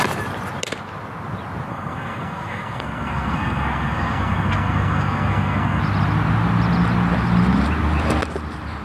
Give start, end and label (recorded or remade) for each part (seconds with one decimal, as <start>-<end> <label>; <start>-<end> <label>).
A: 0.0-1.7 recorded; 1.7-5.8 remade; 5.8-8.8 recorded

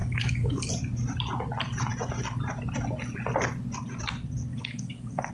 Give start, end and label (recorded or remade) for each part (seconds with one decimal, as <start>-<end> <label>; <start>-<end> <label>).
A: 0.0-0.7 remade; 0.7-4.5 recorded; 4.5-5.3 remade

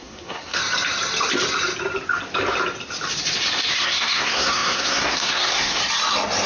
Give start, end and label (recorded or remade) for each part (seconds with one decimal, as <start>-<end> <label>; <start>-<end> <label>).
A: 0.0-0.6 remade; 0.6-3.7 recorded; 3.7-5.8 remade; 5.8-6.5 recorded

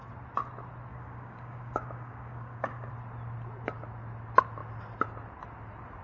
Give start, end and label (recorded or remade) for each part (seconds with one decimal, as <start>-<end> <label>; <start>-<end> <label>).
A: 0.0-0.9 recorded; 0.9-2.9 remade; 2.9-6.0 recorded